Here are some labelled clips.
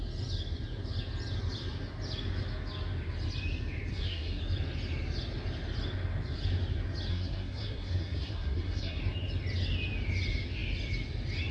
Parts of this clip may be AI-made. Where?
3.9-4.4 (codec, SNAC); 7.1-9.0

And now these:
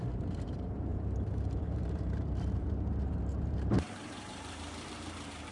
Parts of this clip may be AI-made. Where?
0.0-5.5 (vocoder, BigVGAN v2)

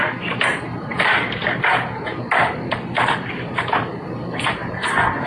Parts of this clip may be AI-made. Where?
none

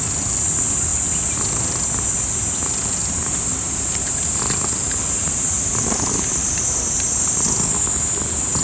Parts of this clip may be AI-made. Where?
3.0-4.4 (vocoder, BigVGAN v2); 5.2-6.8

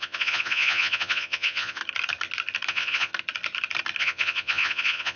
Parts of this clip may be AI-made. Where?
0.0-1.8 (vocoder, Vocos); 2.7-3.1; 4.0-5.2

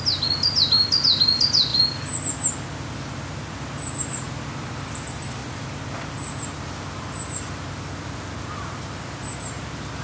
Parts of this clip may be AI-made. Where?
none